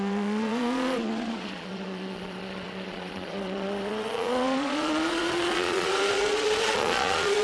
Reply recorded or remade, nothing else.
remade